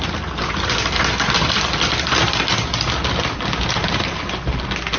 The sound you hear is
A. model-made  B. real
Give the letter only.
B